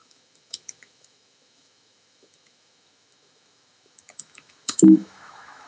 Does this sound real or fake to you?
fake